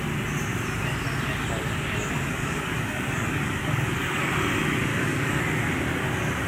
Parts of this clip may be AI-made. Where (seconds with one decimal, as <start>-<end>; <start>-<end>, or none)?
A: 1.7-4.3; 4.9-5.4